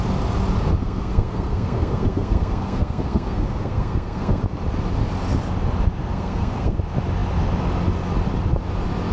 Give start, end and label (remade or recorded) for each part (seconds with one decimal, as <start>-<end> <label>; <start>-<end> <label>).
0.0-0.8 recorded; 0.8-4.4 remade; 4.4-6.1 recorded; 6.1-6.8 remade; 6.8-9.1 recorded